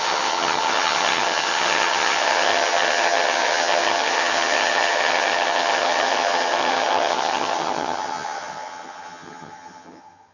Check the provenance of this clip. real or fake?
fake